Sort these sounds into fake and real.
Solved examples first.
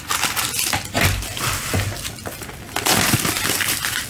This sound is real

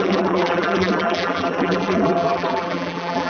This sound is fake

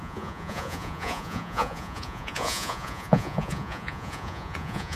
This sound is fake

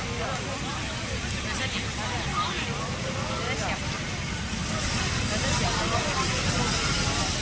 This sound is real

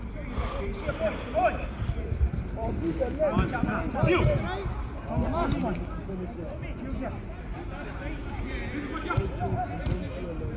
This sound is real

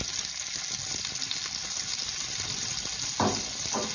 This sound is real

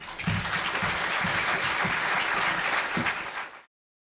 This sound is real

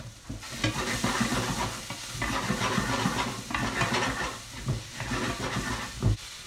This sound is real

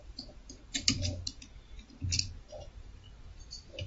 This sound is fake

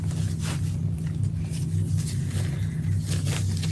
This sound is real